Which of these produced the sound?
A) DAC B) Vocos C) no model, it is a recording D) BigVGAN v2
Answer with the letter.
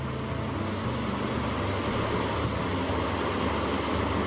C